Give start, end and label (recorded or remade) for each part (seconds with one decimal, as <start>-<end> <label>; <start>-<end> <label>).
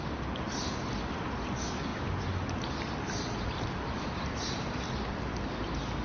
0.0-6.0 recorded